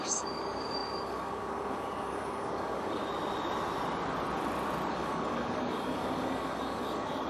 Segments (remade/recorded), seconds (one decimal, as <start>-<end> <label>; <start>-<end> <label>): 0.0-3.0 remade; 3.0-4.9 recorded; 4.9-7.3 remade